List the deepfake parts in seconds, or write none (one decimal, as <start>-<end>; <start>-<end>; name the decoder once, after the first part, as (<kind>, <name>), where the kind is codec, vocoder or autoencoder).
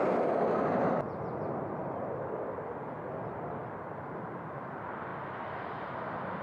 0.0-5.1 (vocoder, BigVGAN v2)